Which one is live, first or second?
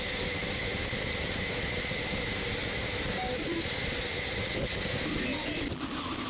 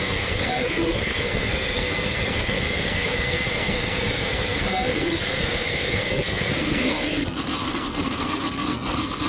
first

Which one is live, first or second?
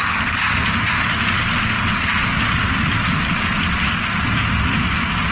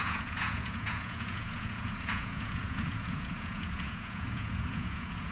first